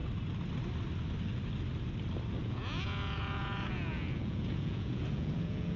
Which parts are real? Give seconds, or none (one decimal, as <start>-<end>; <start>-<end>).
0.0-2.4